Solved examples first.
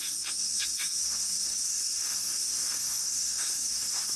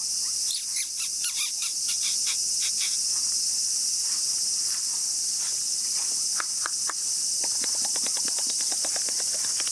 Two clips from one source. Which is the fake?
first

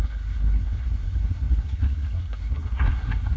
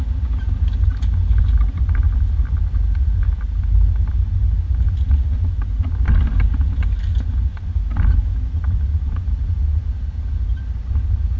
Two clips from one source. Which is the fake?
first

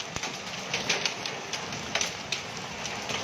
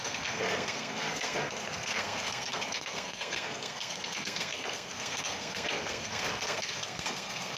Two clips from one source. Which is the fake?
second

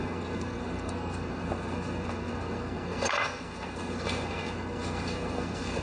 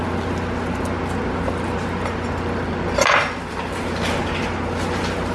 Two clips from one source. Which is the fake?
first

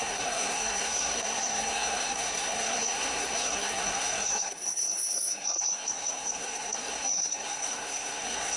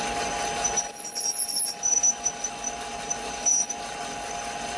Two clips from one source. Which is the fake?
first